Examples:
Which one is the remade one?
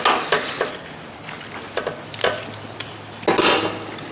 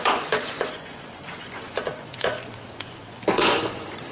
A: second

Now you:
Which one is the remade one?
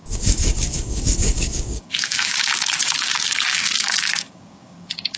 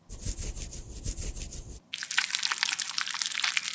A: first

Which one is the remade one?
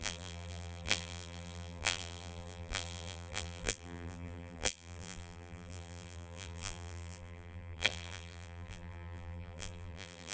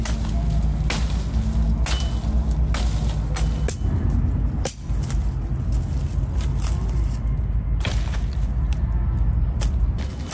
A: first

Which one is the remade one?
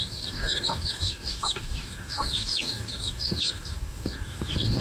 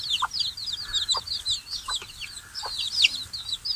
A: first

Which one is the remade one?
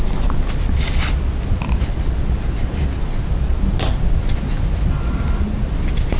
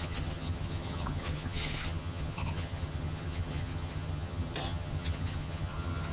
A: second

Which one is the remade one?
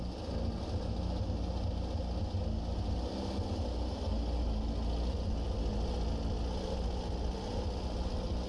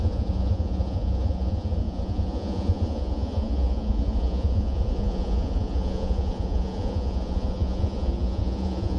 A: second